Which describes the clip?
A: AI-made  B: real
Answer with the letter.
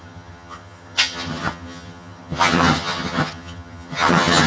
A